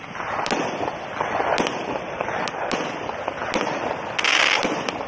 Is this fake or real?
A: real